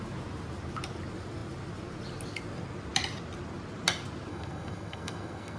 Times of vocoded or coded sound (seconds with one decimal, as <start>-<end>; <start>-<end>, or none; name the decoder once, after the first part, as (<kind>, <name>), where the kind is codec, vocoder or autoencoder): 4.3-5.6 (codec, SNAC)